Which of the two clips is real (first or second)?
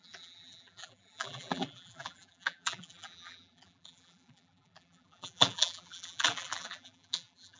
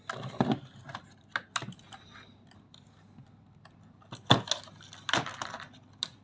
second